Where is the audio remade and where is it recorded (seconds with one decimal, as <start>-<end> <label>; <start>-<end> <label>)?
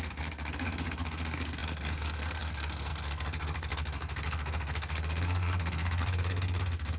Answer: 0.0-7.0 remade